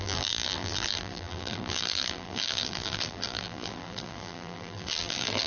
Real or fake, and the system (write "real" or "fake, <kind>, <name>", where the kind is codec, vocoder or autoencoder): fake, vocoder, BigVGAN v2